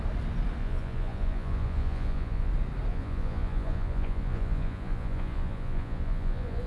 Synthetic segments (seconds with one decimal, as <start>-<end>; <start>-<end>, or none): 0.6-2.5; 2.9-6.7